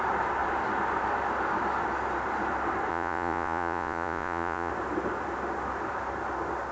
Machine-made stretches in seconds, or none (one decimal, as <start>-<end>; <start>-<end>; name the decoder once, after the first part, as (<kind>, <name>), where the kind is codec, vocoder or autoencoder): 2.9-4.7 (vocoder, Vocos)